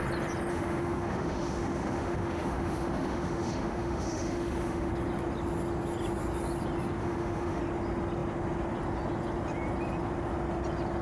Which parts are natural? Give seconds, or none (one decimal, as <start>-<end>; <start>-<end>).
0.0-0.5; 4.9-7.0; 7.6-11.0